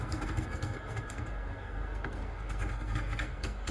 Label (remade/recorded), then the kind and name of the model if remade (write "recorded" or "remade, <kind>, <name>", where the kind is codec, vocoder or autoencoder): remade, codec, SNAC